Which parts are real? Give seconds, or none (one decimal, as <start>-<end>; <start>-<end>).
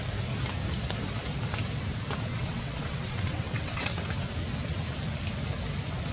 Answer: 0.0-2.3; 4.0-6.1